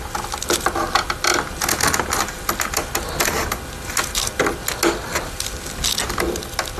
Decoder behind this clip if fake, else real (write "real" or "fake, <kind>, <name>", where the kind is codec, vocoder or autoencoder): real